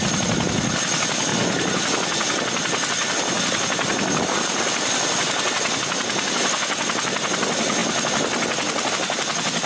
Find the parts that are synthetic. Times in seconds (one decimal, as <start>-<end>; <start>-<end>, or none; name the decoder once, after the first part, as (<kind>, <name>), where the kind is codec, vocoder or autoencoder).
none